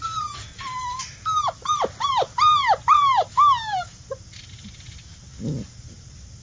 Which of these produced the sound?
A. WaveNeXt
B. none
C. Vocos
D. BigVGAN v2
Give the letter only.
B